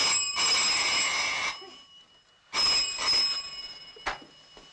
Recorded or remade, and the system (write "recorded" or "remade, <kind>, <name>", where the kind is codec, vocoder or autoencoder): recorded